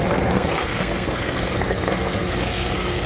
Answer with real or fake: fake